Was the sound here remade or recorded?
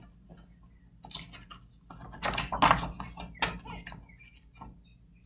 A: recorded